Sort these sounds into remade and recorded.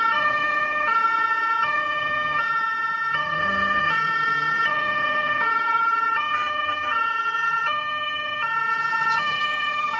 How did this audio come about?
remade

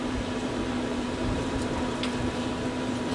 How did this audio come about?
remade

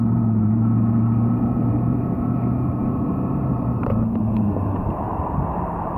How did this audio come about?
remade